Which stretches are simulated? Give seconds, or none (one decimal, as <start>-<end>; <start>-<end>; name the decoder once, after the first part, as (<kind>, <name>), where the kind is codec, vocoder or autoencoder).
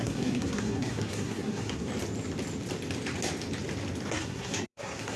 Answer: 0.0-1.9 (codec, SNAC); 4.1-5.2